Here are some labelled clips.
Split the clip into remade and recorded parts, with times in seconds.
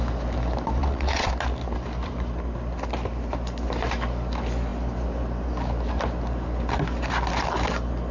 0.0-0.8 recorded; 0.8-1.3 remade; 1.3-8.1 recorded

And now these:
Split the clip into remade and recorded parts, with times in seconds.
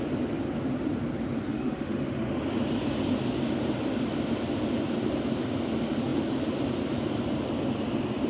0.0-1.5 recorded; 1.5-2.4 remade; 2.4-8.3 recorded